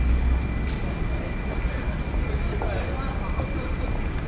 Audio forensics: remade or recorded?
recorded